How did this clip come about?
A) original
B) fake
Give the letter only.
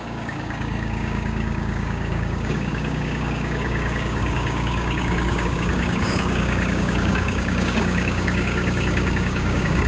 B